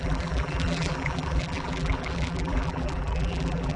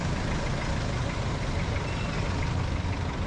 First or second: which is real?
second